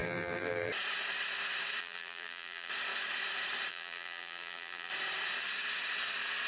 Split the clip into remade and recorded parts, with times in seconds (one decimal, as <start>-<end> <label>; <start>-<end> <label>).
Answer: 0.0-0.7 remade; 0.7-1.8 recorded; 1.8-2.7 remade; 2.7-3.7 recorded; 3.7-4.9 remade; 4.9-6.5 recorded